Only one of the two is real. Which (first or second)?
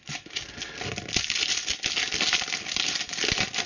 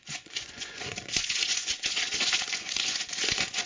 first